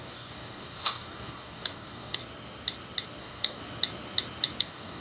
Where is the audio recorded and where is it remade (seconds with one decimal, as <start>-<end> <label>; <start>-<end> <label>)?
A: 0.0-2.2 remade; 2.2-3.2 recorded; 3.2-3.6 remade; 3.6-4.6 recorded; 4.6-5.0 remade